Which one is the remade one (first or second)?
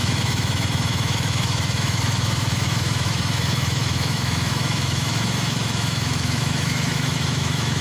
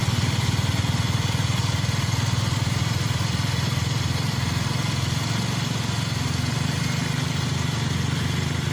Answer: first